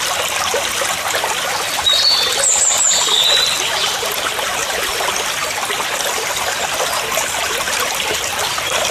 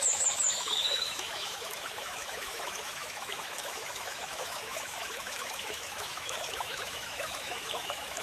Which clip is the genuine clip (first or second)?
first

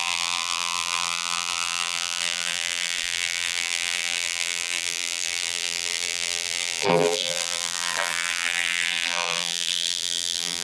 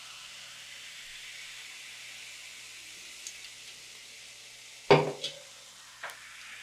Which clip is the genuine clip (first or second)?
second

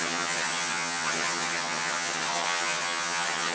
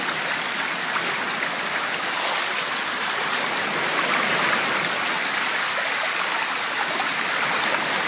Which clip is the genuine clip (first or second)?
second